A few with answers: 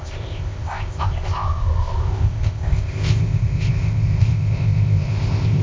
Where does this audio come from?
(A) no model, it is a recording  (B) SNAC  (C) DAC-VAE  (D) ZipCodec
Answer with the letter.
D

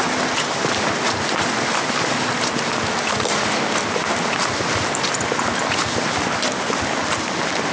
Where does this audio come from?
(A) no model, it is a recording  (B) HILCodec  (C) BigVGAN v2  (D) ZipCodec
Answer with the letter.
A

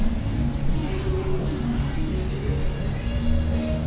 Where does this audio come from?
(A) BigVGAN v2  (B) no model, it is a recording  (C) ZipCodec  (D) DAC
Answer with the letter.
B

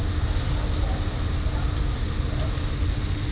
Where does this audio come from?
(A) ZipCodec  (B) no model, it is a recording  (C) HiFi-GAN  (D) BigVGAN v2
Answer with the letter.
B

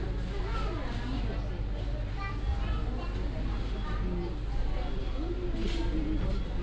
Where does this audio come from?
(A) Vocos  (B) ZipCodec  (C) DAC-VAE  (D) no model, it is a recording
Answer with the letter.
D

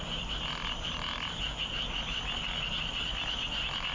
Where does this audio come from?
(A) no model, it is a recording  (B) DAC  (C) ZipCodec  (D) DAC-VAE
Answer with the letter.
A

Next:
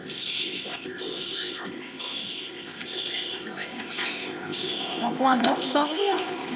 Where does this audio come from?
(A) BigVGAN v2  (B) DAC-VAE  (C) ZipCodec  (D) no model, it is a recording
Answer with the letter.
C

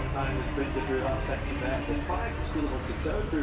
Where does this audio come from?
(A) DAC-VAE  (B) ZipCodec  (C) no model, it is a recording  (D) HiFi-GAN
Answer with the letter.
C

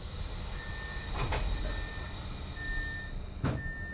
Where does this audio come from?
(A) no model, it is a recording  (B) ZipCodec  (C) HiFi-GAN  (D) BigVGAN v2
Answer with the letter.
A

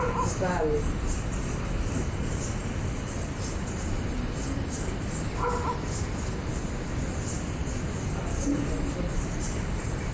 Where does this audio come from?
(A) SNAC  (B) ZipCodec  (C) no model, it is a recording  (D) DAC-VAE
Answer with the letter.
C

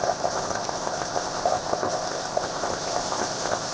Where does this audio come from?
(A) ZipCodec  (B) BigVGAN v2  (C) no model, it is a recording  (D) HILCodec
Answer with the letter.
A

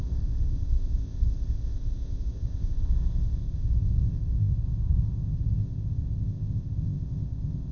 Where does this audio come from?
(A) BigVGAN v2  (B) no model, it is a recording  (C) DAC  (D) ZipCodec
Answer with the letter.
D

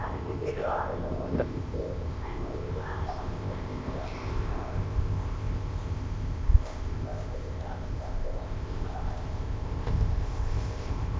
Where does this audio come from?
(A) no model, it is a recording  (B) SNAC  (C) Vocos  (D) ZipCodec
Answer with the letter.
D